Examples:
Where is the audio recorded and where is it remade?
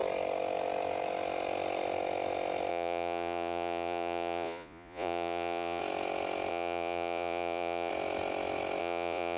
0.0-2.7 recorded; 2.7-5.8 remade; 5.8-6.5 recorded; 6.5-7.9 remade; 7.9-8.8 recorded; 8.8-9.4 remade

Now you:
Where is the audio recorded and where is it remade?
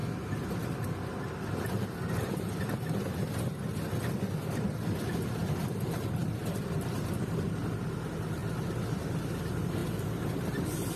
0.0-11.0 recorded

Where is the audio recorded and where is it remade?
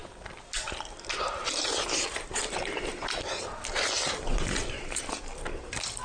0.0-1.4 recorded; 1.4-5.0 remade; 5.0-6.0 recorded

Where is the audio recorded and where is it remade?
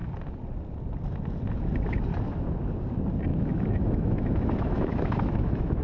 0.0-3.3 recorded; 3.3-5.8 remade